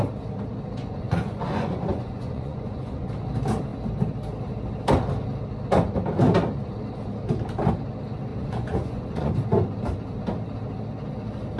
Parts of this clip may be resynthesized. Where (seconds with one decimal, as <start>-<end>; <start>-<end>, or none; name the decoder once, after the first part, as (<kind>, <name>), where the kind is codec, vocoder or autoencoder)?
0.8-3.1 (vocoder, Vocos); 8.3-9.3